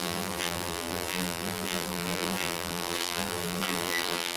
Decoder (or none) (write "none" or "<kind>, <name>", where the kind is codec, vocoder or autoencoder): vocoder, BigVGAN v2